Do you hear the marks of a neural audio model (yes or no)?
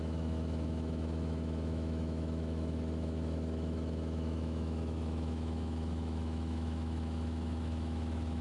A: yes